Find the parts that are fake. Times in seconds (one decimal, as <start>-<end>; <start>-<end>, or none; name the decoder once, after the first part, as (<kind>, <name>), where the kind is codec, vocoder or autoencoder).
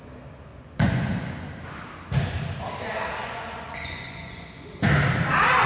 0.5-1.5 (vocoder, Vocos); 3.2-4.8